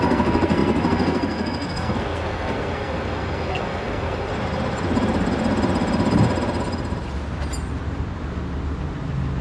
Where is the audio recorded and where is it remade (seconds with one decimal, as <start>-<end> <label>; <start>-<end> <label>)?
0.0-4.3 remade; 4.3-9.4 recorded